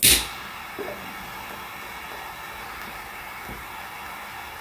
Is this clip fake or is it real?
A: real